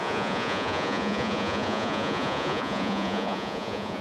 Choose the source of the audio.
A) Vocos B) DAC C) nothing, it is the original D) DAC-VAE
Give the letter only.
A